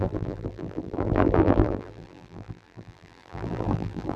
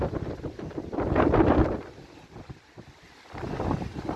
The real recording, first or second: second